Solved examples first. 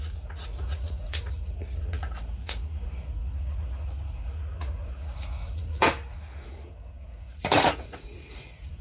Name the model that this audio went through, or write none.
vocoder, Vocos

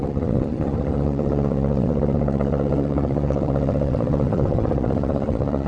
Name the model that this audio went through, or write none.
vocoder, Vocos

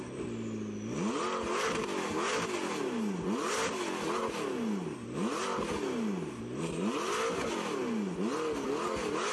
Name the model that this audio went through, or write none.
none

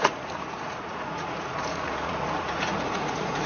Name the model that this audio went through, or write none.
vocoder, Vocos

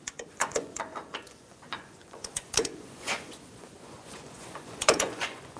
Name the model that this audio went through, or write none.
vocoder, Vocos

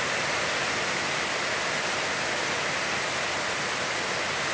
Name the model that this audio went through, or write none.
none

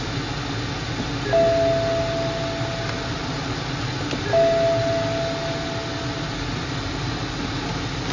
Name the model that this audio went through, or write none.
none